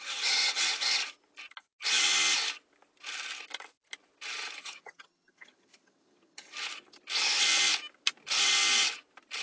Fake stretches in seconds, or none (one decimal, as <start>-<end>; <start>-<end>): 0.0-1.0; 4.6-6.5